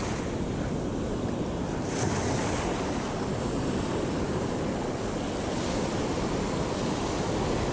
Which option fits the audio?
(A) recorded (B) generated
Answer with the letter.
A